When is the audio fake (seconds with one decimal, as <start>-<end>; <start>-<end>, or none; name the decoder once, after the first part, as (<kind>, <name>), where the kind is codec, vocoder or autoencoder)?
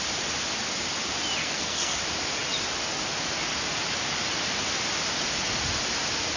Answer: 1.4-2.0 (codec, SNAC)